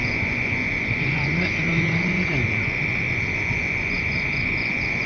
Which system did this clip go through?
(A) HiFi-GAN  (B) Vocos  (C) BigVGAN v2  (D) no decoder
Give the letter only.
B